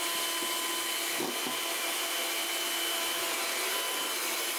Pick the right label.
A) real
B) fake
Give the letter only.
A